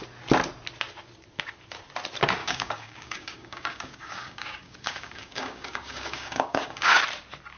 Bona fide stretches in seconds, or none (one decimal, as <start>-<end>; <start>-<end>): 0.0-2.4; 7.0-7.6